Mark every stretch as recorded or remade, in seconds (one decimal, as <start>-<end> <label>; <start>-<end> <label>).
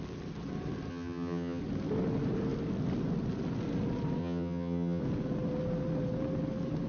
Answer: 0.0-0.9 recorded; 0.9-1.6 remade; 1.6-4.2 recorded; 4.2-5.0 remade; 5.0-6.9 recorded